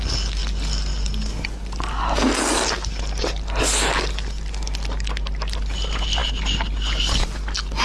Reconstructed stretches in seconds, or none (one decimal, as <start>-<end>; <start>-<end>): none